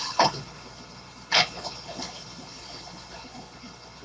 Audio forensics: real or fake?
fake